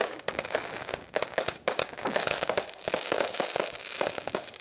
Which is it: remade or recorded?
remade